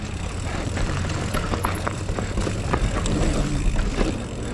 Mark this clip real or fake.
fake